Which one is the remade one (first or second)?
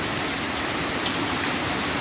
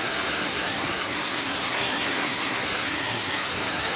second